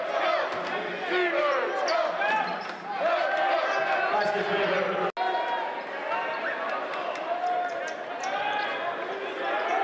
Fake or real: real